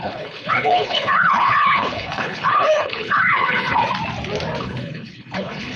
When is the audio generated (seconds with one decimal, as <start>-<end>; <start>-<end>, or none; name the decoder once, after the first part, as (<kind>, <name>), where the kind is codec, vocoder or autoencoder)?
0.0-3.8 (codec, HILCodec); 4.6-5.8

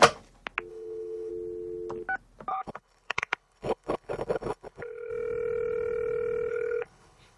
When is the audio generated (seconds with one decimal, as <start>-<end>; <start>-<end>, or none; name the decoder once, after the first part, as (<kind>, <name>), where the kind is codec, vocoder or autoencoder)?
0.7-1.3 (codec, HILCodec); 2.5-5.1; 6.5-7.4

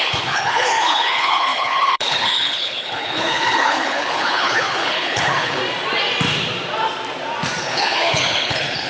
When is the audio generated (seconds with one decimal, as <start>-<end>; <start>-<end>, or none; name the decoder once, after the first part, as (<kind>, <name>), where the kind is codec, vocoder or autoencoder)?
0.0-5.6 (codec, HILCodec); 7.6-8.9